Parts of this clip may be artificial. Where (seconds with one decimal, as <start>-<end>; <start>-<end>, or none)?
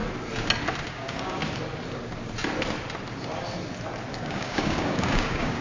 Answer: 0.9-1.4; 4.1-5.6